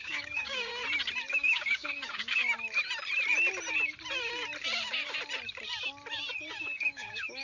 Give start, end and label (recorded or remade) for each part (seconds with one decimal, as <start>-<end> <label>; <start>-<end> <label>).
0.0-0.7 remade; 0.7-1.3 recorded; 1.3-2.4 remade; 2.4-6.5 recorded; 6.5-7.4 remade